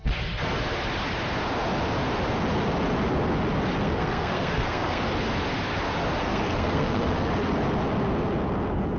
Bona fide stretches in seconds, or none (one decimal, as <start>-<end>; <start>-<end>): 0.0-3.8; 5.0-6.2; 7.3-9.0